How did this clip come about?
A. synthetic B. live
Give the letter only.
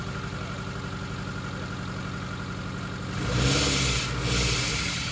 B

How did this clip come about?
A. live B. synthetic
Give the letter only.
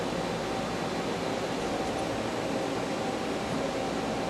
A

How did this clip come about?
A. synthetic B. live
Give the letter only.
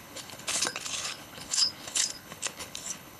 A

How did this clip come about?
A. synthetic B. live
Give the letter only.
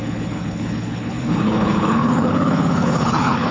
A